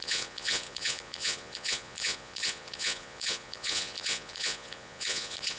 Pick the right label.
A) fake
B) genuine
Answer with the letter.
A